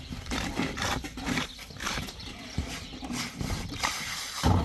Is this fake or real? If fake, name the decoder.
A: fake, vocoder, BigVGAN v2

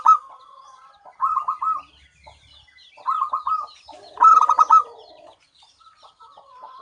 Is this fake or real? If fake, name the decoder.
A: fake, vocoder, BigVGAN v2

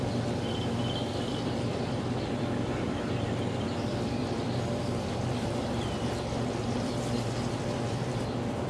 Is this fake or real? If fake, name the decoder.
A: fake, vocoder, BigVGAN v2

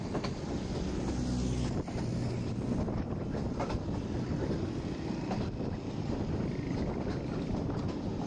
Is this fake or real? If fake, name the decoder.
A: real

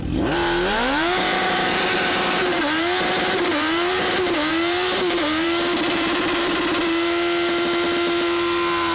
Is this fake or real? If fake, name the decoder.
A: fake, vocoder, BigVGAN v2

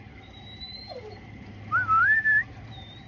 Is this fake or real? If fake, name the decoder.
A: fake, vocoder, BigVGAN v2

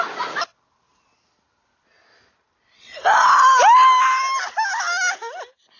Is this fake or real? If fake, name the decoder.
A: real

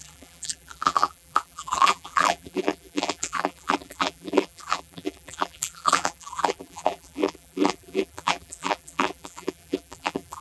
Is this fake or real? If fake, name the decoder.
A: fake, vocoder, BigVGAN v2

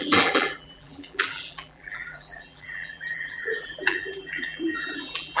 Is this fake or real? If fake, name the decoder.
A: fake, vocoder, BigVGAN v2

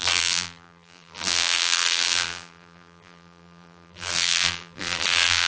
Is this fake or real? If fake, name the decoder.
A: fake, vocoder, BigVGAN v2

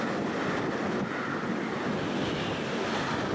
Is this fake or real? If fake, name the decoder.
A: real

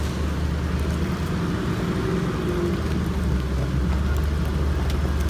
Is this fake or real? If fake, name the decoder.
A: real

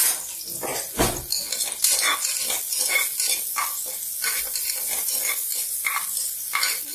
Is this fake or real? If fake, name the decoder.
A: real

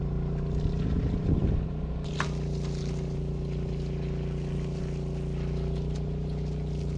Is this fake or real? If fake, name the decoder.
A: real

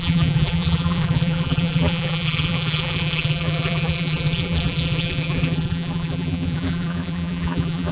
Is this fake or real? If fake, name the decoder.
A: fake, vocoder, BigVGAN v2